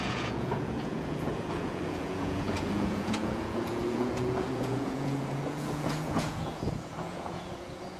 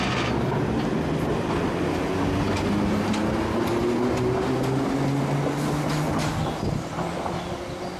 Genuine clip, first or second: second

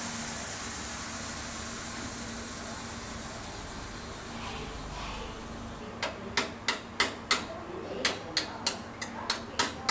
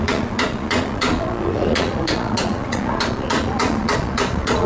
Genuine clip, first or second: first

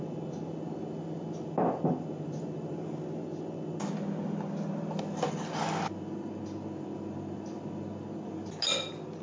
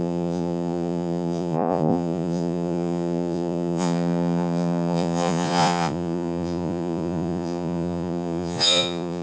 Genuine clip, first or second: first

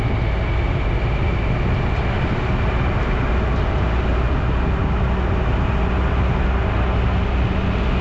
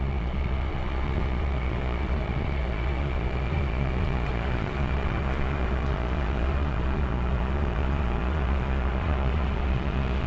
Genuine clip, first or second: first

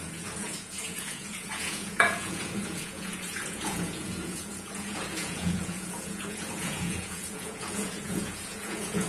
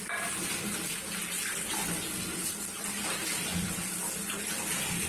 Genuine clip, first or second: second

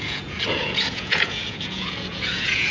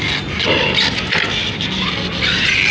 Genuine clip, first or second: second